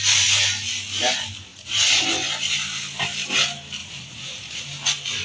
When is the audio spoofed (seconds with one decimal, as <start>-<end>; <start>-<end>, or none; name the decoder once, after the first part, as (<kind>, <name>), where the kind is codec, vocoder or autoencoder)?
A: 1.5-2.0 (vocoder, Vocos); 3.8-4.6